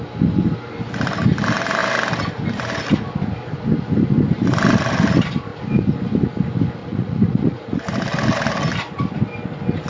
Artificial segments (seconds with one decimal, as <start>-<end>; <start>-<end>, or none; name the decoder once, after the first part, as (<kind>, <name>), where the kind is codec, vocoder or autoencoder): 6.8-7.8 (vocoder, Vocos)